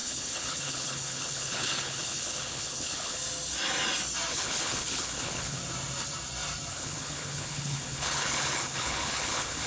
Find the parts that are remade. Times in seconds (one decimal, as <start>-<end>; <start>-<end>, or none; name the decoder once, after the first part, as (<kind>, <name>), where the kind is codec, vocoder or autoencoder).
0.0-3.2 (codec, HILCodec); 4.3-5.6; 6.7-9.7